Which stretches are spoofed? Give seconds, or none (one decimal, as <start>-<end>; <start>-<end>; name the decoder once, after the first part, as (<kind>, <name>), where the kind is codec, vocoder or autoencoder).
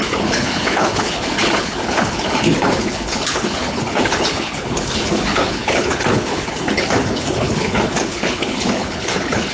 0.0-9.5 (codec, HILCodec)